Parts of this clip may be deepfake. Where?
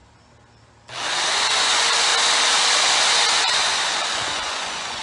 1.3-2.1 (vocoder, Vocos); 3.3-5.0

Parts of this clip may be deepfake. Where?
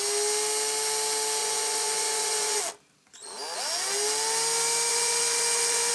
1.4-2.6 (vocoder, Vocos); 4.9-5.9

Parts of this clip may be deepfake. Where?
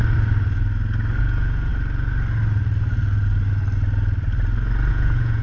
1.2-1.7 (vocoder, Vocos); 4.9-5.4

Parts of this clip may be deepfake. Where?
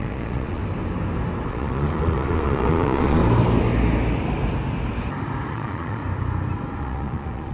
0.0-0.6 (vocoder, Vocos); 1.5-3.2; 5.5-6.0; 6.8-7.5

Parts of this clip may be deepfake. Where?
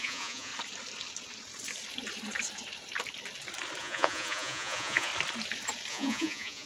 0.0-0.5 (vocoder, Vocos); 3.8-5.1; 5.9-6.7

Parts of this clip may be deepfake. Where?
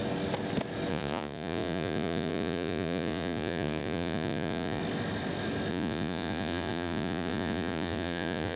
0.9-4.8 (vocoder, Vocos); 5.7-8.6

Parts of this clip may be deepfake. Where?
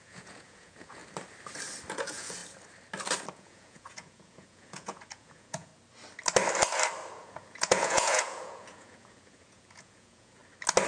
0.0-1.0 (vocoder, Vocos); 1.9-2.4; 3.3-5.7; 7.1-10.4